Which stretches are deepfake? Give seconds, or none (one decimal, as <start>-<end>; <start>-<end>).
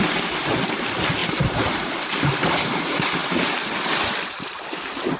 1.2-1.9